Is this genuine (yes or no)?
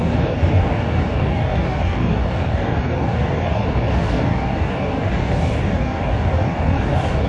no